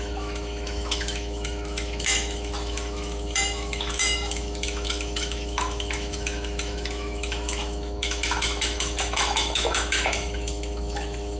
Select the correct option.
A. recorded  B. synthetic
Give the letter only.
B